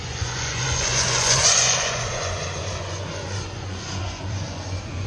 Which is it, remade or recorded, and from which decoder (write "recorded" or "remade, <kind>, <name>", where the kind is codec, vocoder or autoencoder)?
remade, vocoder, Vocos